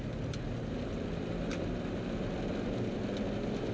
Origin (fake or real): real